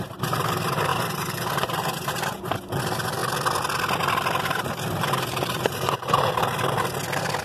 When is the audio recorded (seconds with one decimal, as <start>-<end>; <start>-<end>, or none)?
3.2-4.4; 6.4-7.4